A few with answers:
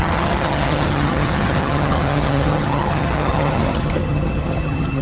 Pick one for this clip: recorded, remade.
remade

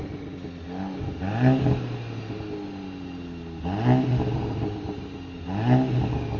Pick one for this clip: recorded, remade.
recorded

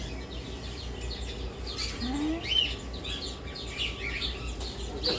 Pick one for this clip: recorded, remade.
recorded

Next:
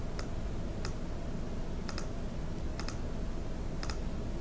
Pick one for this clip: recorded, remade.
recorded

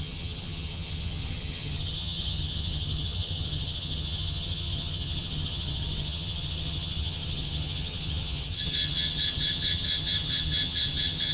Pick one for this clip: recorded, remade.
remade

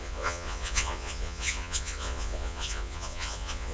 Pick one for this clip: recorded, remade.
remade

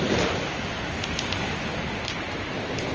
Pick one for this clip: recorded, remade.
recorded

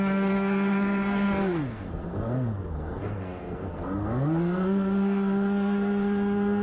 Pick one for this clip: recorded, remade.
remade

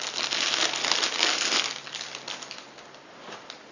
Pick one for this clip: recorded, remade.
recorded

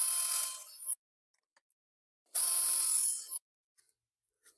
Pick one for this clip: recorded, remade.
recorded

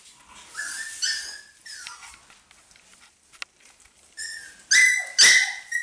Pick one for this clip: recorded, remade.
recorded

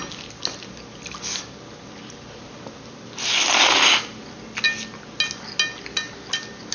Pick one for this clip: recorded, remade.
recorded